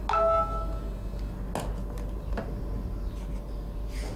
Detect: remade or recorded recorded